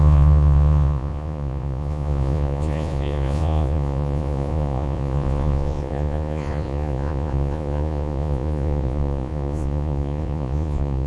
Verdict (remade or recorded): remade